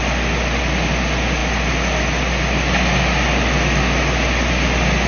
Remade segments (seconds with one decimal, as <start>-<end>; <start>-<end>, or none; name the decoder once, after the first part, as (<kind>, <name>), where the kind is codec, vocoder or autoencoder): none